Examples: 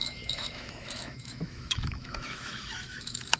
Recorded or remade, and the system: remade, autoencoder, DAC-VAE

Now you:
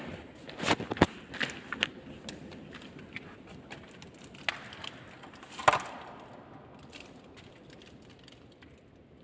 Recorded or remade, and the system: recorded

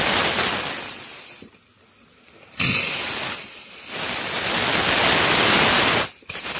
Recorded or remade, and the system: recorded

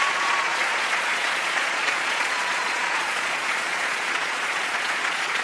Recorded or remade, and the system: remade, vocoder, Vocos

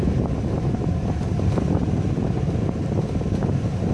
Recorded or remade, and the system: recorded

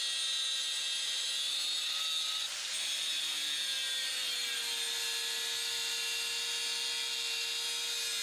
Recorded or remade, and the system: recorded